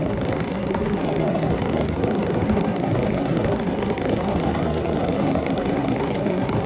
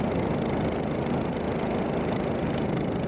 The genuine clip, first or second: second